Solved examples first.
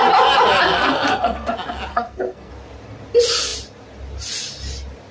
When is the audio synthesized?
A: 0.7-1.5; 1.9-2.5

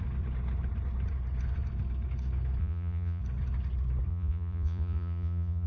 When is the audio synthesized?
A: 2.6-3.2; 4.1-5.7